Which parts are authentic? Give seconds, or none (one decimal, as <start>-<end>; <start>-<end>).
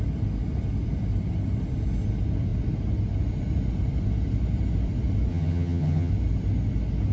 0.0-5.3; 6.1-7.1